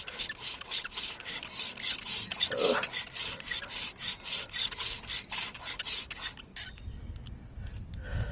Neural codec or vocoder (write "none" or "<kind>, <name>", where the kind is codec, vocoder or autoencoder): none